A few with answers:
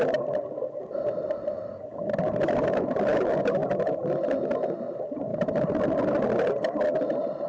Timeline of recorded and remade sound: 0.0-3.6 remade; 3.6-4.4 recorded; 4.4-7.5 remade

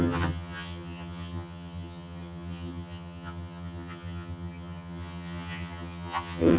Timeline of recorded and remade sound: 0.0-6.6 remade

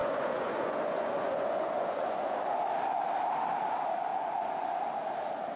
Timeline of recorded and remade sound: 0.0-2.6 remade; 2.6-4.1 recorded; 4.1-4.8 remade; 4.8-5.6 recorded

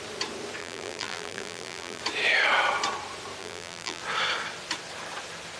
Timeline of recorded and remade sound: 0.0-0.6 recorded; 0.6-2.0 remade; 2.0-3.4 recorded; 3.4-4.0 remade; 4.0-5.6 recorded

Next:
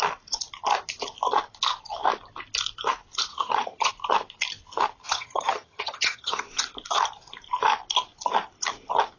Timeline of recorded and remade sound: 0.0-3.3 recorded; 3.3-3.9 remade; 3.9-5.0 recorded; 5.0-6.4 remade; 6.4-9.2 recorded

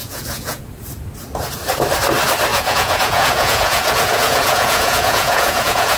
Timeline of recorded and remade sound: 0.0-0.6 remade; 0.6-2.5 recorded; 2.5-6.0 remade